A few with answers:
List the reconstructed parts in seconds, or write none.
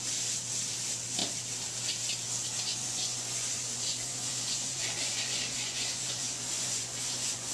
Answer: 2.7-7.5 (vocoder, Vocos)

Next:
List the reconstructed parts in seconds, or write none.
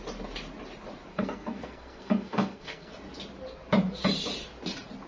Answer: 1.1-2.9 (codec, SNAC)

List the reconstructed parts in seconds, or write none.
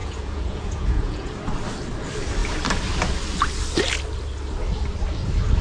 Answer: 0.0-1.3 (vocoder, Vocos)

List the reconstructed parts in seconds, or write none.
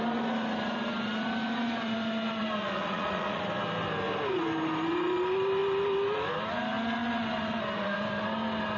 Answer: 2.6-3.4 (vocoder, Vocos)